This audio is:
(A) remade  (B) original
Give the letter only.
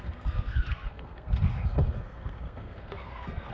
A